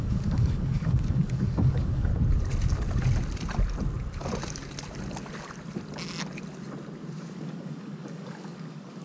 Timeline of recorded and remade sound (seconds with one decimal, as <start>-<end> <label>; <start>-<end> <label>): 0.0-2.1 remade; 2.1-7.3 recorded; 7.3-9.0 remade